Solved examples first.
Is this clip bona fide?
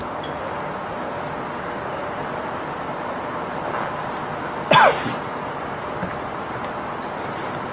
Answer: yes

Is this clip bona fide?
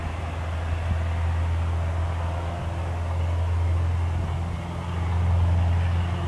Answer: yes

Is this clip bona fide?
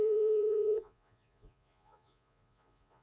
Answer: no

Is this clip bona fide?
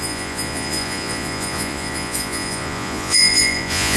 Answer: no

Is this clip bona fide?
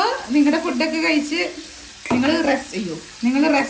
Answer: yes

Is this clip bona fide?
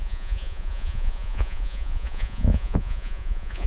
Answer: no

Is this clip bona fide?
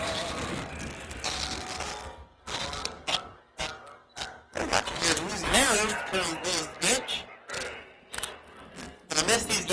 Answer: yes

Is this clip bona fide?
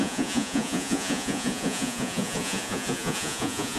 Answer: no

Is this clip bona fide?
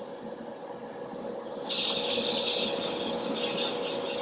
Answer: yes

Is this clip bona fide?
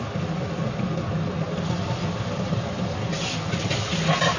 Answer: yes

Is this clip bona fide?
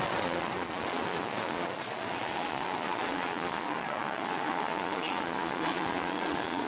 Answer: no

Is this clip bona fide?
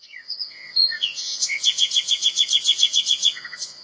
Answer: no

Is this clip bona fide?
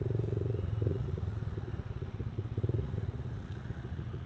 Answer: no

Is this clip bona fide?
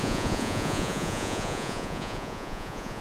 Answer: no